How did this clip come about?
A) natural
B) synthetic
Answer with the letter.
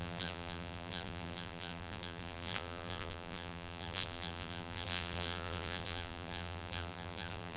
B